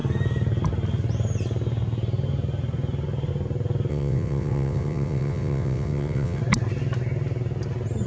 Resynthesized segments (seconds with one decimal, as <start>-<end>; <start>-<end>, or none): 3.9-6.4